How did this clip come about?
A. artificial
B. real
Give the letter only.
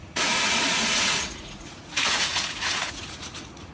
A